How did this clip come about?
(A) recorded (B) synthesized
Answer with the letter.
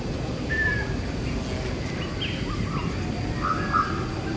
A